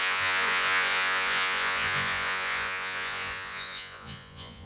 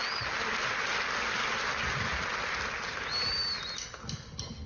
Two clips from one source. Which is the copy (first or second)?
first